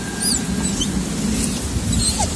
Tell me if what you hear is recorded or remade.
recorded